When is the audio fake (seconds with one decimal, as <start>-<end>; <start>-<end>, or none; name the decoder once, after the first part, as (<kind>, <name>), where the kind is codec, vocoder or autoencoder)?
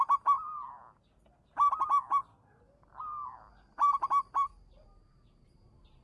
none